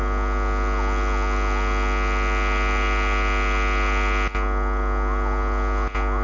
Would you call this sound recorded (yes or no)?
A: yes